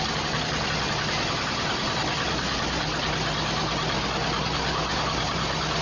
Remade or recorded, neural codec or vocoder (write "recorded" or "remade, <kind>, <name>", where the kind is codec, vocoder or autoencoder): recorded